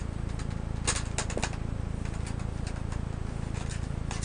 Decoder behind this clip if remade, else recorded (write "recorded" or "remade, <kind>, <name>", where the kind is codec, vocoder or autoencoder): recorded